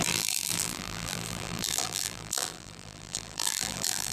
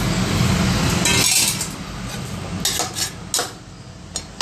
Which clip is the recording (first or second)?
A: second